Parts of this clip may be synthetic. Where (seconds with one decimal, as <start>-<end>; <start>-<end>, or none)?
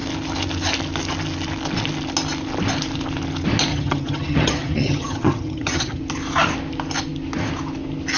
3.7-6.0